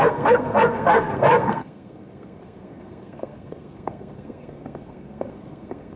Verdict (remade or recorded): remade